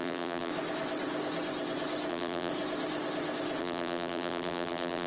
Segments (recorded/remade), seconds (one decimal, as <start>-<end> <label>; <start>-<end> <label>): 0.0-0.5 remade; 0.5-2.1 recorded; 2.1-2.5 remade; 2.5-3.6 recorded; 3.6-5.1 remade